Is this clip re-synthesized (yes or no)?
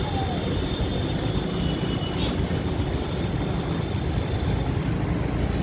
no